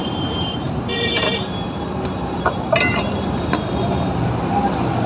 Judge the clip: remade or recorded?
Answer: remade